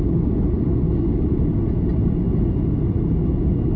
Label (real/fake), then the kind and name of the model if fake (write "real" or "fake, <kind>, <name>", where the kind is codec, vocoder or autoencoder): real